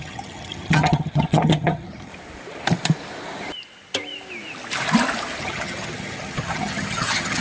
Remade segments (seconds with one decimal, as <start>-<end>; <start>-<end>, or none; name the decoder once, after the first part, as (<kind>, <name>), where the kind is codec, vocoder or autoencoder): 0.0-2.1 (vocoder, HiFi-GAN); 5.4-7.4